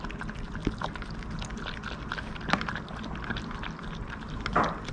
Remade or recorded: recorded